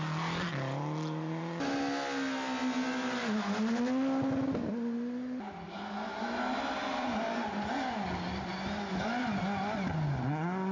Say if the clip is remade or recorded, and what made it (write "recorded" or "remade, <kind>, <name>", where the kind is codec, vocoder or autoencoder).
recorded